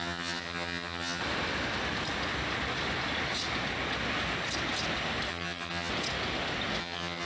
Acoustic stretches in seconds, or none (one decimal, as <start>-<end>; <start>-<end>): 1.2-5.3; 5.9-6.8

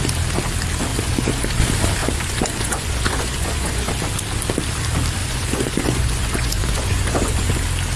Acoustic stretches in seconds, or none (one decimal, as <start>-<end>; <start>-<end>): 0.0-0.9; 1.6-2.0; 3.9-5.2; 7.6-8.0

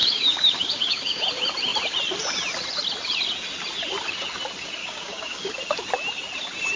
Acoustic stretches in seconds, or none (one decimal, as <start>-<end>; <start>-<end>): 1.2-4.8; 5.4-6.8

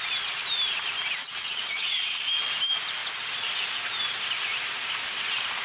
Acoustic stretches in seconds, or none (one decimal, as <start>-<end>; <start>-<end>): 0.0-1.2; 2.2-5.6

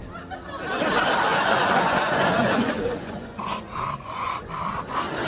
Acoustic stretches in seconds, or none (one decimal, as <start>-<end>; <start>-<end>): 0.0-1.3; 4.5-5.3

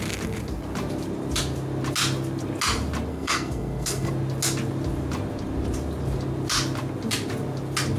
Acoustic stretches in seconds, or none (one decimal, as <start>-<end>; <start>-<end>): 0.0-3.1; 4.1-8.0

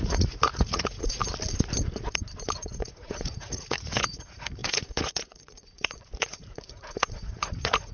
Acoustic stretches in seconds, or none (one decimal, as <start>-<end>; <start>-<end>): 1.2-2.7

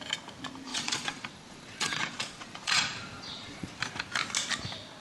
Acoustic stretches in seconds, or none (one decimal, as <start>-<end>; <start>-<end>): 0.0-0.7; 3.7-5.0